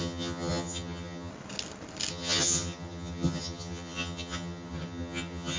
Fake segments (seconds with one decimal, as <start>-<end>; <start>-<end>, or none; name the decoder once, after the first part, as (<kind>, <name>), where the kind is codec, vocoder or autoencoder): 0.0-1.3 (vocoder, HiFi-GAN); 2.1-5.6